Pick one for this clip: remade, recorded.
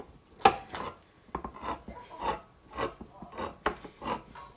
recorded